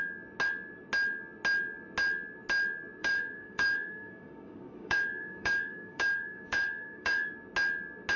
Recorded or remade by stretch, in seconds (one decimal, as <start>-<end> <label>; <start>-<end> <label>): 0.0-3.0 recorded; 3.0-7.3 remade; 7.3-8.2 recorded

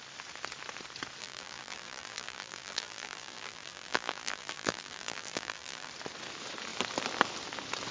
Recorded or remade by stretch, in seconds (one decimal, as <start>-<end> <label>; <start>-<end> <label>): 0.0-1.2 recorded; 1.2-5.9 remade; 5.9-7.9 recorded

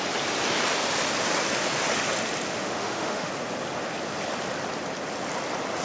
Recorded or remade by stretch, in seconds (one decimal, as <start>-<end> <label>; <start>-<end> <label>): 0.0-2.6 recorded; 2.6-3.3 remade; 3.3-5.8 recorded

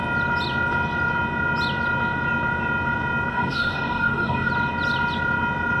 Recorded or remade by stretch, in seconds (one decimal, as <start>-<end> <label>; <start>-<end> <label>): 0.0-3.3 recorded; 3.3-4.5 remade; 4.5-5.8 recorded

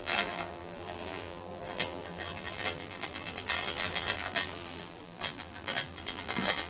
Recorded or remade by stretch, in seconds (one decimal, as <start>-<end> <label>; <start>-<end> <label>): 0.0-6.7 remade

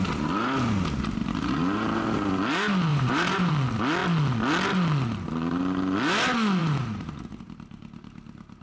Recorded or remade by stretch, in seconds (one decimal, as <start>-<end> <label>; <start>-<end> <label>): 0.0-1.2 recorded; 1.2-2.3 remade; 2.3-2.9 recorded; 2.9-3.5 remade; 3.5-6.6 recorded; 6.6-7.3 remade; 7.3-8.6 recorded

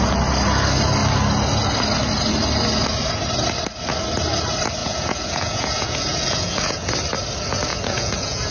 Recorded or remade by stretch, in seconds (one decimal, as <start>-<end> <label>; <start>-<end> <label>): 0.0-4.8 recorded; 4.8-6.9 remade; 6.9-7.7 recorded; 7.7-8.5 remade

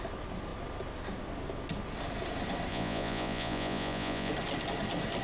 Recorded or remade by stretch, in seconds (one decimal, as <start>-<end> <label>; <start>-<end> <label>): 0.0-2.7 recorded; 2.7-4.3 remade; 4.3-5.2 recorded